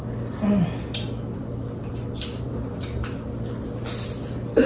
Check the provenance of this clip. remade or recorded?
recorded